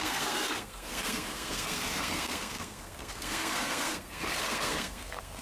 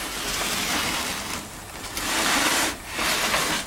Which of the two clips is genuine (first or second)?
second